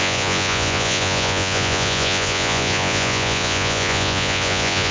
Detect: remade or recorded remade